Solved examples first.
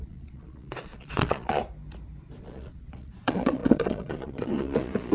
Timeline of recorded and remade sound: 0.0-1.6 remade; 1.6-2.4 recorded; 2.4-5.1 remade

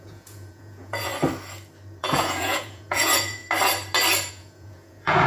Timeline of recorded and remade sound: 0.0-1.1 remade; 1.1-2.0 recorded; 2.0-3.4 remade; 3.4-4.3 recorded; 4.3-5.3 remade